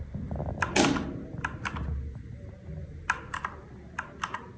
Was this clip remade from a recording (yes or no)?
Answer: no